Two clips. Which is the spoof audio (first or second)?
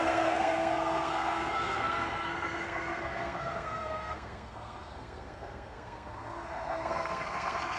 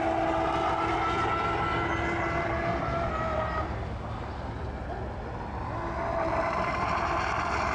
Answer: first